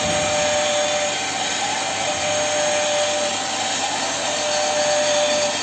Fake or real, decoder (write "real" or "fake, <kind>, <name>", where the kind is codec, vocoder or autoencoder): real